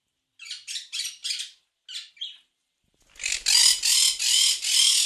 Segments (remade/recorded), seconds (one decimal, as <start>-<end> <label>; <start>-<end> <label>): 0.0-5.1 recorded